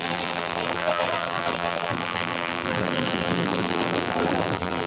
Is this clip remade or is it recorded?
remade